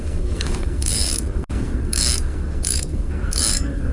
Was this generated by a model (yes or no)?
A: yes